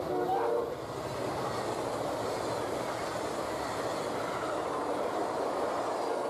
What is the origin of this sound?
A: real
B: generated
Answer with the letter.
A